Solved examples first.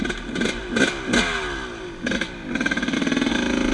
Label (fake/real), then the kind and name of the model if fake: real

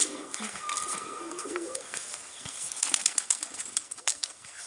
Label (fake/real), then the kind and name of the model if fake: fake, codec, SNAC